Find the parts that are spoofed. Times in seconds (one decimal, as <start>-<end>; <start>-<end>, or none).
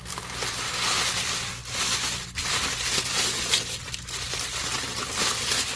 none